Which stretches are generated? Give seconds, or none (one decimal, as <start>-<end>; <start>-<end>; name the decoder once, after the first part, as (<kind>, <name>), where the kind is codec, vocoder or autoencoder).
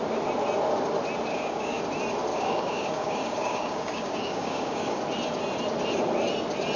1.3-1.8 (codec, DAC); 2.3-5.0